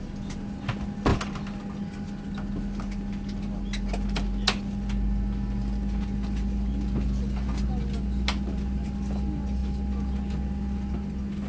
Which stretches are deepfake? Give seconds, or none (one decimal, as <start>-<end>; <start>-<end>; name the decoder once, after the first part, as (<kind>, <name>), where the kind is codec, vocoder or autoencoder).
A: none